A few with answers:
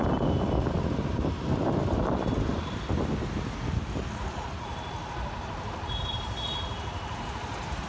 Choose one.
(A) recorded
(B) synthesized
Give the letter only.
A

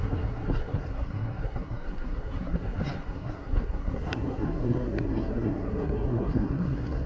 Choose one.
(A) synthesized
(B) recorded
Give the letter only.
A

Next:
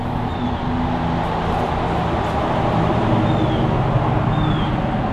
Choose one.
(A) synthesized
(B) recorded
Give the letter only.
B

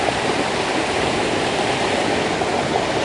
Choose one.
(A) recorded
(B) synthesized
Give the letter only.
A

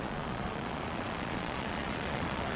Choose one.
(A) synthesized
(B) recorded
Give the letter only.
A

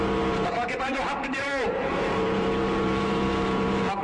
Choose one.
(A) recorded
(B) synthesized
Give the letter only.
B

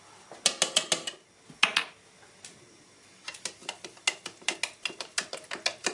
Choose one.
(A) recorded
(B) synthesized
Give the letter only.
A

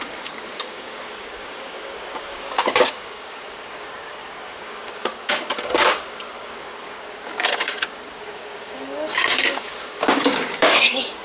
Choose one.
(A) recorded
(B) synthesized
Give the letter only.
B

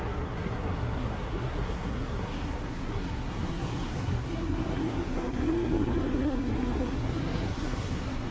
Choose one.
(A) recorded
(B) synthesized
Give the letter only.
B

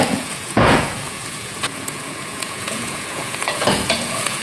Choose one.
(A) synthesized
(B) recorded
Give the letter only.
A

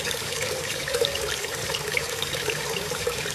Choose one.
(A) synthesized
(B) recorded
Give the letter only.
A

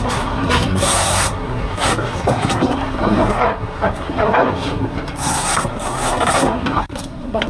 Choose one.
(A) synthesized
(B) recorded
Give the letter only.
A